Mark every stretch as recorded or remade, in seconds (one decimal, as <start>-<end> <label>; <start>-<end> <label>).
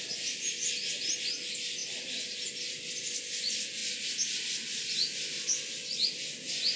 0.0-6.8 recorded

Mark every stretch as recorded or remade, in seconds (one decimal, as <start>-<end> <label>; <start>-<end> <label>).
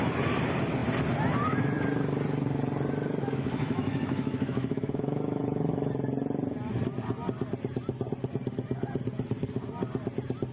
0.0-3.2 recorded; 3.2-5.9 remade; 5.9-10.5 recorded